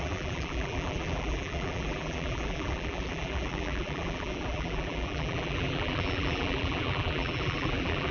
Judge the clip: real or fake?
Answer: fake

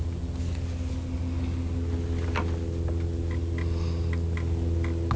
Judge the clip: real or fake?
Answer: real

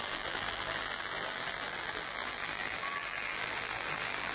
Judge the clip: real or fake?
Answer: fake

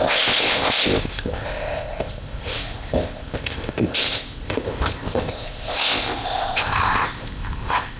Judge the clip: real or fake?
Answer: fake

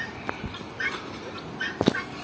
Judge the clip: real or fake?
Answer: real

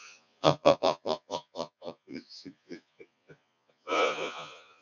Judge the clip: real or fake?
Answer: fake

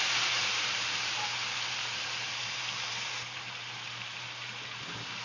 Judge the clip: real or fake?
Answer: fake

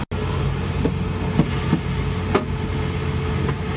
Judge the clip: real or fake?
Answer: real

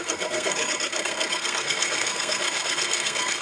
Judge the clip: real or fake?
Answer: fake